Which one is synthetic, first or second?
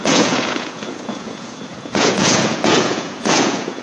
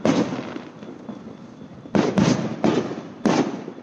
first